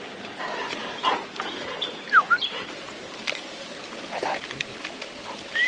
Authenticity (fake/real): real